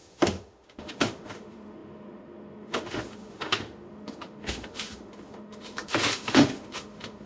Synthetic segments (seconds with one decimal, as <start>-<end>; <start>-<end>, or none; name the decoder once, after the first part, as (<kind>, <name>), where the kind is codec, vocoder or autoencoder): 0.0-7.3 (autoencoder, DAC-VAE)